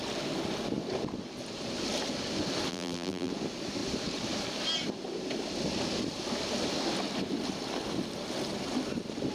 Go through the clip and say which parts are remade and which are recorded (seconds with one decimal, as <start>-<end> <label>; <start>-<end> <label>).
0.0-2.7 recorded; 2.7-3.3 remade; 3.3-9.3 recorded